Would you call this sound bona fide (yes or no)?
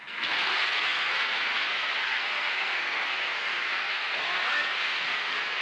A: no